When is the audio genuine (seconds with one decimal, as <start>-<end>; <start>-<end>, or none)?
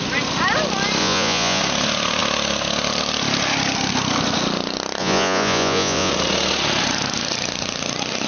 0.0-1.0; 1.6-5.0; 6.1-8.3